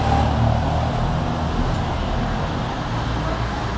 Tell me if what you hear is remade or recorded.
recorded